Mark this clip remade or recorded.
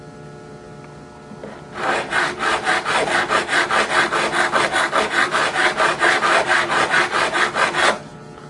recorded